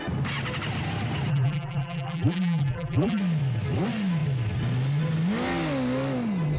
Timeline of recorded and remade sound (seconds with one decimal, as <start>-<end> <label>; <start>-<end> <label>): 0.0-1.3 recorded; 1.3-3.2 remade; 3.2-6.6 recorded